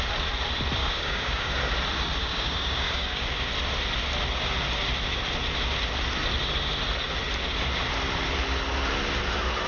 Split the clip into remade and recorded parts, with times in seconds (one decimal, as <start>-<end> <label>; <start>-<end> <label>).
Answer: 0.0-0.8 recorded; 0.8-1.6 remade; 1.6-2.2 recorded; 2.2-3.5 remade; 3.5-9.7 recorded